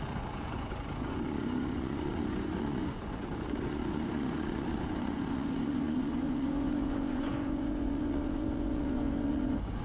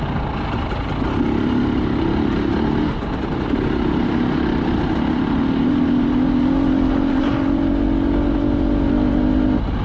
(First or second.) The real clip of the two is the second